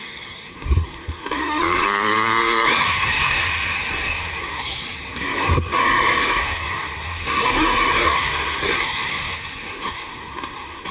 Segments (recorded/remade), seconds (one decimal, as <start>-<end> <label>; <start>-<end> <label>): 0.0-10.9 remade

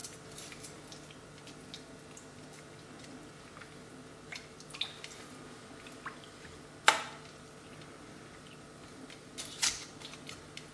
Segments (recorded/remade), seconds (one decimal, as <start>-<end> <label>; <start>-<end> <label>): 0.0-10.7 recorded

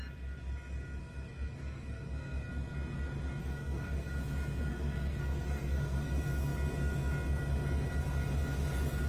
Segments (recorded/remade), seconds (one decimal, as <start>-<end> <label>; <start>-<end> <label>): 0.0-1.0 recorded; 1.0-2.5 remade; 2.5-3.4 recorded; 3.4-4.1 remade; 4.1-4.7 recorded; 4.7-6.1 remade; 6.1-9.1 recorded

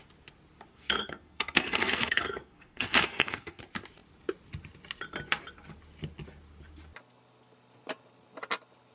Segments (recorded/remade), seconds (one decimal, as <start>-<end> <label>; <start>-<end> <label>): 0.0-0.7 recorded; 0.7-3.6 remade; 3.6-8.9 recorded

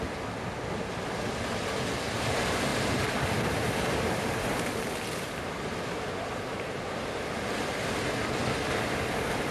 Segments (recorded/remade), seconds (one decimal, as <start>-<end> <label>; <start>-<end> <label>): 0.0-9.5 recorded

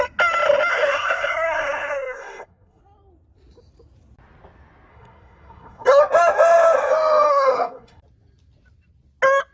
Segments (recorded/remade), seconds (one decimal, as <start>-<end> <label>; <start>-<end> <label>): 0.0-0.7 recorded; 0.7-2.8 remade; 2.8-4.9 recorded; 4.9-6.0 remade; 6.0-7.3 recorded; 7.3-8.0 remade; 8.0-9.5 recorded